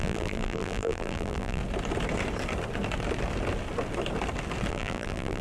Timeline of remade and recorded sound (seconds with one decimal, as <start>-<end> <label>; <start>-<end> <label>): 0.0-1.6 remade; 1.6-4.7 recorded; 4.7-5.4 remade